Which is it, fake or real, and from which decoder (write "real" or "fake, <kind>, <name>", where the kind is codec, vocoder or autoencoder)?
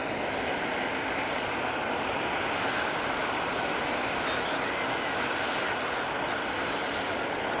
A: real